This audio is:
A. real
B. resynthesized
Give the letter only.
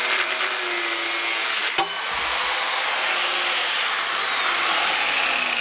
A